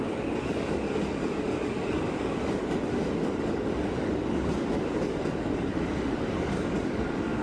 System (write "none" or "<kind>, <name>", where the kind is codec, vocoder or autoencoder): codec, DAC